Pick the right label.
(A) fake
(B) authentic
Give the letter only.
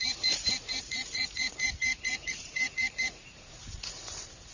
A